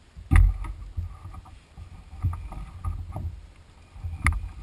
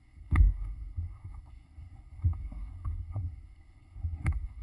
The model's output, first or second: second